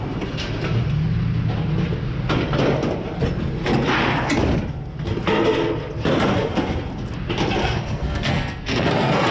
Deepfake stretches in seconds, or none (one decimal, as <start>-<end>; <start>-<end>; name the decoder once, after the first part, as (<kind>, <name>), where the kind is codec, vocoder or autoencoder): 7.6-9.3 (codec, SNAC)

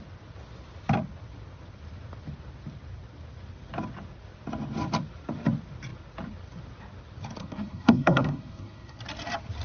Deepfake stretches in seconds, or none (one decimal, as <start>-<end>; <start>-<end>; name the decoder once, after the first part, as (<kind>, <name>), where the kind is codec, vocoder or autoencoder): 7.4-9.0 (codec, SNAC)

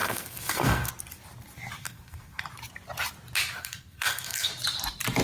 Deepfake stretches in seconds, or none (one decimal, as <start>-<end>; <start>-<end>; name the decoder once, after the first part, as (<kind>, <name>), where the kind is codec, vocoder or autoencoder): 0.0-0.9 (codec, SNAC); 1.8-2.4; 3.6-4.5

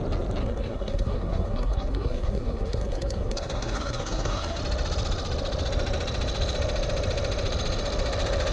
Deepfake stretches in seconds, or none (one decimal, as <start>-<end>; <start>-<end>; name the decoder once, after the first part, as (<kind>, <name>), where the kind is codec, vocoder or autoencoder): 0.4-4.6 (codec, SNAC)

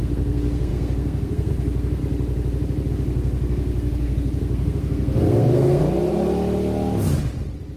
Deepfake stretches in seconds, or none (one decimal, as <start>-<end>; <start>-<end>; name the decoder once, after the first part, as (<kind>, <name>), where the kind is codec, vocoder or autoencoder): 0.0-2.0 (codec, SNAC); 2.9-5.8

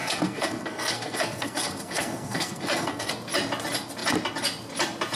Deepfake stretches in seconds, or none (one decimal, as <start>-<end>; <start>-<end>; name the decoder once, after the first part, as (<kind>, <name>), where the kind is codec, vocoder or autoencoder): 0.0-3.1 (codec, SNAC)